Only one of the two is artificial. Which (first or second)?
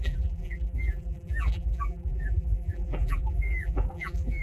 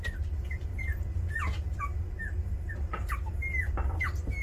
first